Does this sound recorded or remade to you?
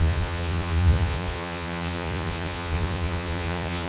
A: remade